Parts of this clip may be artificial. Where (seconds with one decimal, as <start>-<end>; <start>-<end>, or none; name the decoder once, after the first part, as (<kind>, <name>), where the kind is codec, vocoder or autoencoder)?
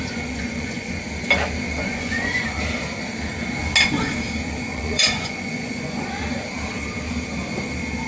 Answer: 0.0-1.0 (vocoder, Vocos); 1.8-2.6; 4.7-6.1